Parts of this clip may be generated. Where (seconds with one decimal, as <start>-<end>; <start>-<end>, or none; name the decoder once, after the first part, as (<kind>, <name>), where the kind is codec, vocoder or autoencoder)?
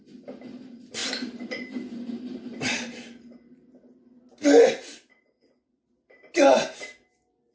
none